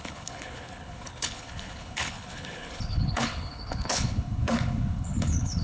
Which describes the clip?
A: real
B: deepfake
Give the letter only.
B